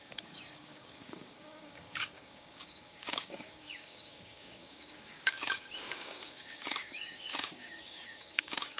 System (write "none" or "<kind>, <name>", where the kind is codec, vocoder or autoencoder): codec, DAC